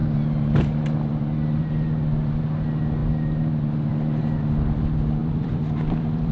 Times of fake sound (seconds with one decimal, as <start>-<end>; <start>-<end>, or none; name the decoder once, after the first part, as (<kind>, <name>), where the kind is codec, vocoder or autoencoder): 5.2-6.3 (vocoder, BigVGAN v2)